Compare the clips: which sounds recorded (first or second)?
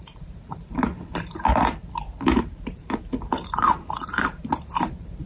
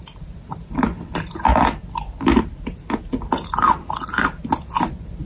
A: second